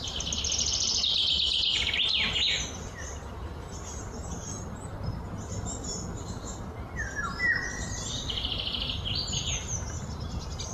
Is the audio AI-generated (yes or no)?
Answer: no